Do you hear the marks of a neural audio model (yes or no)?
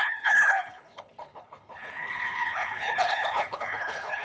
yes